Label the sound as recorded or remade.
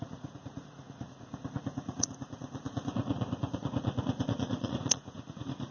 remade